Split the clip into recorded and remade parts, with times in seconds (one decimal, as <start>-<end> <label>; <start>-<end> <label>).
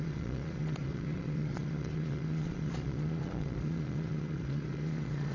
0.0-5.3 remade